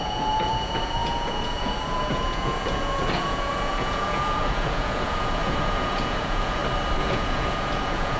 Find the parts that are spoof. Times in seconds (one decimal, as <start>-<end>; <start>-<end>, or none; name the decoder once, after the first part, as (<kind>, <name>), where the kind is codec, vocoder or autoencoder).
0.0-6.6 (vocoder, Vocos); 7.1-8.2